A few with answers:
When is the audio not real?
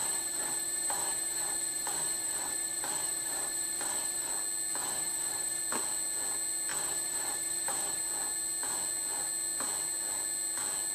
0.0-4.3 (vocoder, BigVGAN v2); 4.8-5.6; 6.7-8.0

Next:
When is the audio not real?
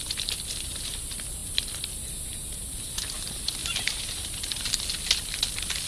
3.6-4.7 (vocoder, BigVGAN v2)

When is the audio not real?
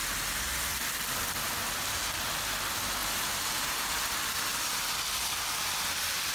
3.0-4.1 (vocoder, BigVGAN v2)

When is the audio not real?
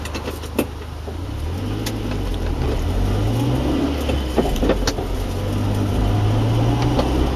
none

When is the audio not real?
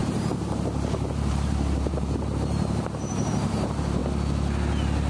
0.0-4.0 (vocoder, BigVGAN v2)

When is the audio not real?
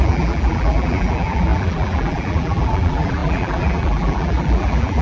0.0-5.0 (vocoder, BigVGAN v2)